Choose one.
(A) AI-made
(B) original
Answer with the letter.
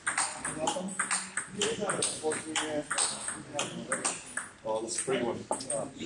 A